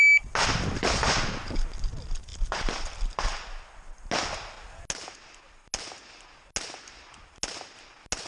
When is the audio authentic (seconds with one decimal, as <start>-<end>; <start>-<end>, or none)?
0.0-8.3